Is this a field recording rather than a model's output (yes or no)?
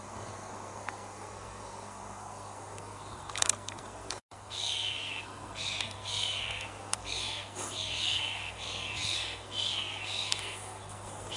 no